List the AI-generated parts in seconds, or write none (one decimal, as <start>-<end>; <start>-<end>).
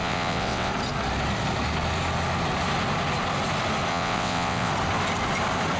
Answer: 0.0-0.7; 3.9-4.7